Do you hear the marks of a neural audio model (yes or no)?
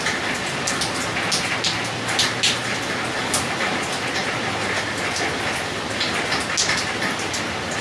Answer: no